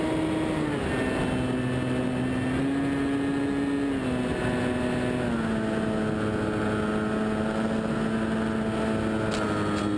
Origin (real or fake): real